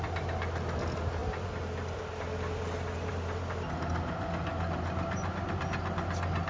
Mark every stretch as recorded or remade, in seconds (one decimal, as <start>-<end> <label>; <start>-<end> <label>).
0.0-6.5 recorded